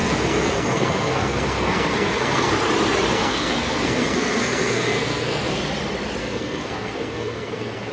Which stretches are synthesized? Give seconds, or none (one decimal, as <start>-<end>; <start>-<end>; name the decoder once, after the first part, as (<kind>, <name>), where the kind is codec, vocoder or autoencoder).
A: 0.0-2.5 (codec, SNAC); 3.1-5.6; 6.2-7.9